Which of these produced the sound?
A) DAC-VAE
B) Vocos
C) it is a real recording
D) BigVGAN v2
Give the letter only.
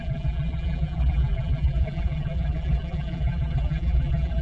D